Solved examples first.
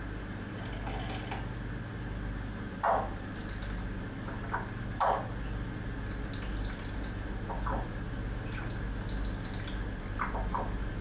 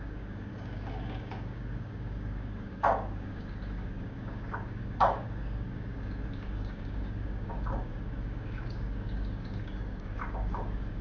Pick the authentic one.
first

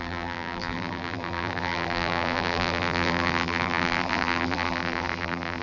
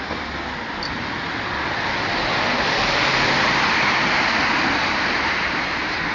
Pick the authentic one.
second